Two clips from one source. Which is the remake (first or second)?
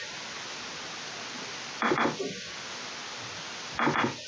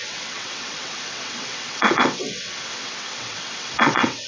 second